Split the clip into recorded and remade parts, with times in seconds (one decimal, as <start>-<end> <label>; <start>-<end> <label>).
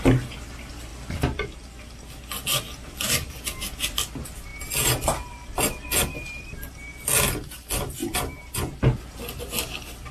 0.0-10.1 recorded